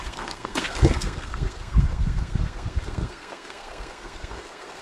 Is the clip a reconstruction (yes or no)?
yes